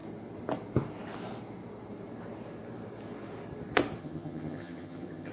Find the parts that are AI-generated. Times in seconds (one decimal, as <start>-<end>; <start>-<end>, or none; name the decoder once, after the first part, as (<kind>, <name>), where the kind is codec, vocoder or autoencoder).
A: 4.0-5.3 (vocoder, HiFi-GAN)